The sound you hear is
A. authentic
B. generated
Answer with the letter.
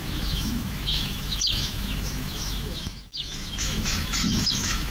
B